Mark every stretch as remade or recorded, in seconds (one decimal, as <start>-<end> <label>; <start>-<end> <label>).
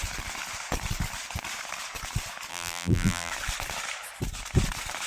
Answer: 0.0-2.5 recorded; 2.5-3.3 remade; 3.3-5.1 recorded